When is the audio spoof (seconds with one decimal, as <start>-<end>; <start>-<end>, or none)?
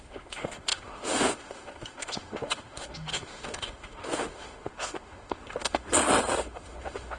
0.0-5.9; 6.4-7.2